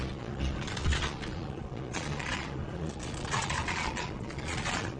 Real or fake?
fake